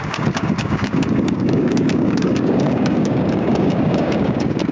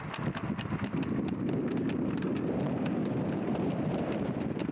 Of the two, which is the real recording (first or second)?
second